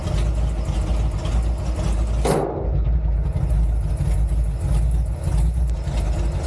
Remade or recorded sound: recorded